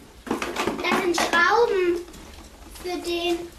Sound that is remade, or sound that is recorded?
recorded